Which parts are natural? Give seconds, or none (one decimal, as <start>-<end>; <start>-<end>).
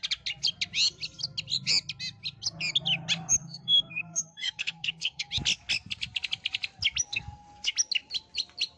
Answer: 0.0-3.4; 5.3-7.1; 7.7-8.8